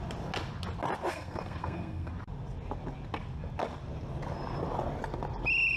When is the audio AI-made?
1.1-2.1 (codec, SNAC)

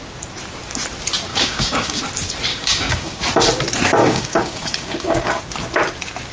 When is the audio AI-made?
1.3-2.0 (codec, DAC); 2.5-3.2; 4.0-5.4

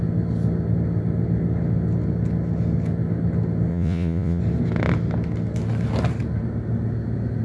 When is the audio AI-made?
3.7-4.4 (vocoder, Vocos)

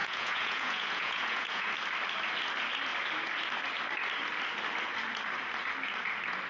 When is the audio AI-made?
0.0-1.7 (vocoder, Vocos)